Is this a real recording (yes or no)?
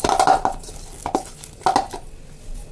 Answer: yes